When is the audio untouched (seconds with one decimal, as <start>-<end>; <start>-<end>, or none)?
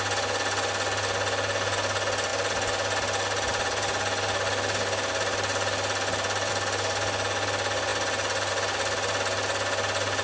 0.0-10.2